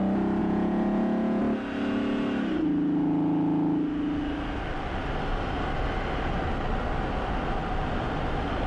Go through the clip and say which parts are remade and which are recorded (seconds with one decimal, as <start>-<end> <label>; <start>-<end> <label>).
0.0-0.4 recorded; 0.4-1.4 remade; 1.4-8.7 recorded